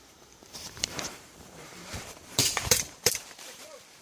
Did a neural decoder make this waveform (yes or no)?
yes